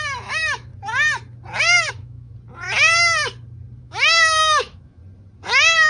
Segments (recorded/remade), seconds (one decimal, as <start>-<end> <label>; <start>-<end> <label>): 0.0-0.7 remade; 0.7-1.9 recorded; 1.9-2.3 remade; 2.3-3.8 recorded; 3.8-5.0 remade; 5.0-5.9 recorded